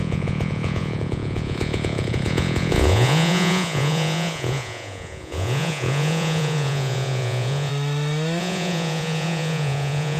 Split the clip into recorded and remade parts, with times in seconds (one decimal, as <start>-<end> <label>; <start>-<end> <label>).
0.0-7.7 remade; 7.7-8.4 recorded; 8.4-10.2 remade